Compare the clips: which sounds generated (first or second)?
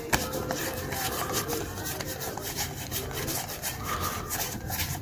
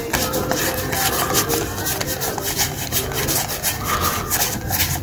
first